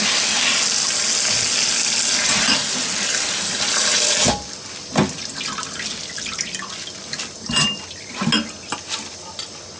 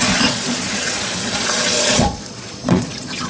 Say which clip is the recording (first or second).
first